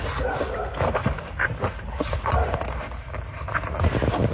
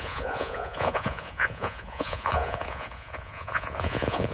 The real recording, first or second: first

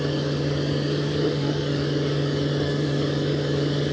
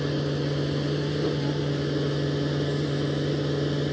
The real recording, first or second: second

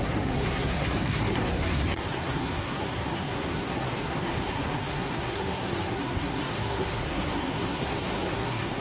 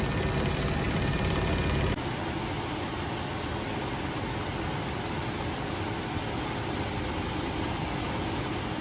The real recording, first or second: second